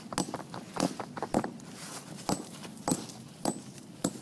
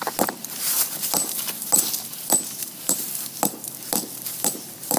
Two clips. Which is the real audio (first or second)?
first